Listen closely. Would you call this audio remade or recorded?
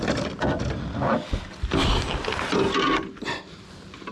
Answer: recorded